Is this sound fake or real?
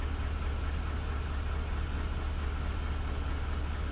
real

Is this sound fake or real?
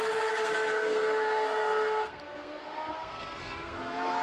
fake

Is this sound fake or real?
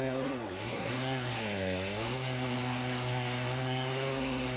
fake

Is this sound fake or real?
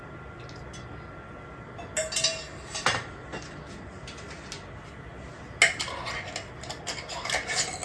real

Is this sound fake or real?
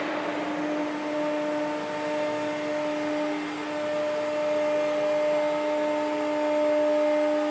real